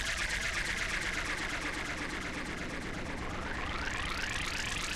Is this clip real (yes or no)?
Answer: yes